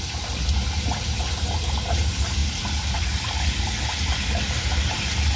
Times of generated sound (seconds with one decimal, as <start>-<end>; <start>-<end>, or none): none